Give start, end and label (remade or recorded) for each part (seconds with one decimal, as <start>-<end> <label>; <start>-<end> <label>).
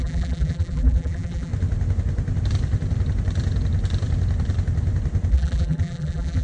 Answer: 0.0-1.5 remade; 1.5-5.3 recorded; 5.3-6.4 remade